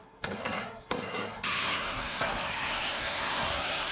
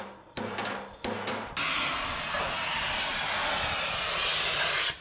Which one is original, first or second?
second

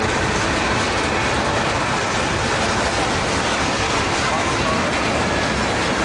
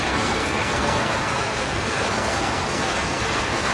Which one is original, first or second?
first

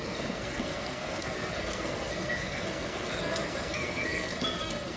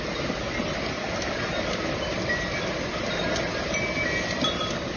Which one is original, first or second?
second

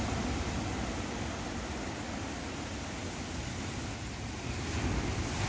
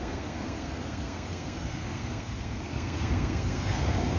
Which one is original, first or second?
first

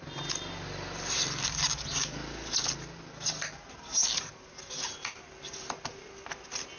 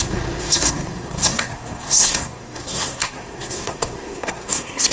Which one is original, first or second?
first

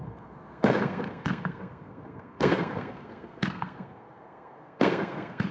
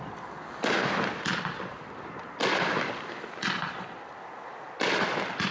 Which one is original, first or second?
second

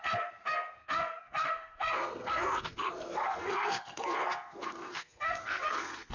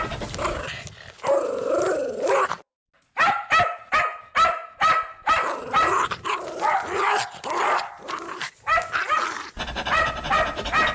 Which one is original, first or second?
second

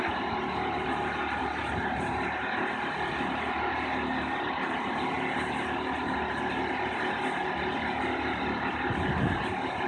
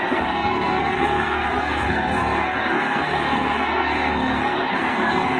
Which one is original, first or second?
first